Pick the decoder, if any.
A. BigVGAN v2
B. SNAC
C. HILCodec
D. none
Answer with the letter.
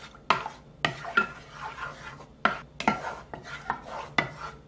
D